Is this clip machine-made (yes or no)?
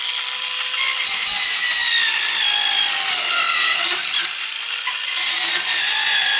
no